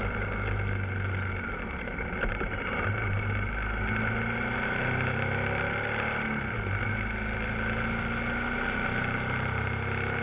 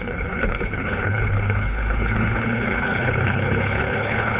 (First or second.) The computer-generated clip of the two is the second